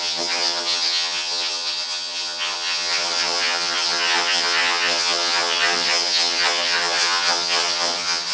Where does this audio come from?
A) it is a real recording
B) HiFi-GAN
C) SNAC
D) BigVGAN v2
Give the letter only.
B